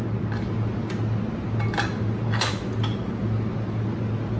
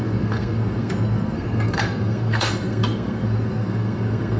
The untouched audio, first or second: first